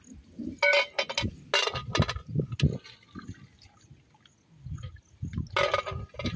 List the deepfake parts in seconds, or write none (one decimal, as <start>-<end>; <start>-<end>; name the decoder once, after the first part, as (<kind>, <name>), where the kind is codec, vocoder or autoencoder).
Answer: none